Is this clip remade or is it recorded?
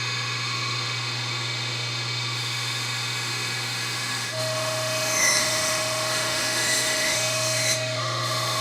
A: remade